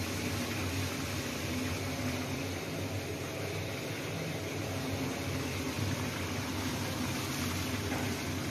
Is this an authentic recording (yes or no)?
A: yes